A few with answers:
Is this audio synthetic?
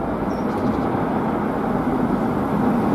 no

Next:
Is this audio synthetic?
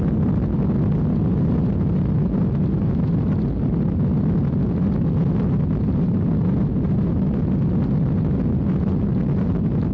no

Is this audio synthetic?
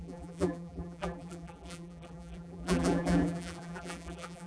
yes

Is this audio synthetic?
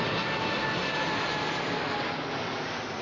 no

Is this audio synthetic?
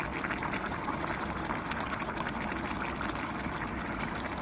yes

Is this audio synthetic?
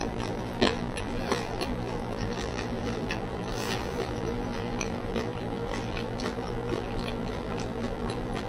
yes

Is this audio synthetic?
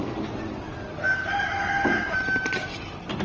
no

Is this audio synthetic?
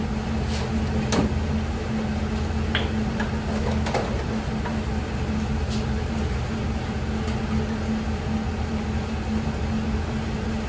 no